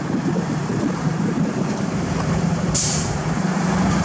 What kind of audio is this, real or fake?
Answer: fake